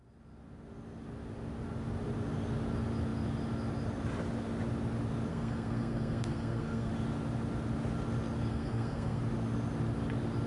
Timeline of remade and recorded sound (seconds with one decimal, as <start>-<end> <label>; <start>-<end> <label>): 0.0-5.3 recorded; 5.3-6.9 remade; 6.9-8.5 recorded; 8.5-9.2 remade; 9.2-10.5 recorded